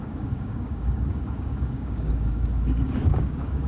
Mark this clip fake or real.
fake